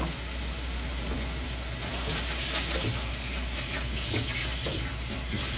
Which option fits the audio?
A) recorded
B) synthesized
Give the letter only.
A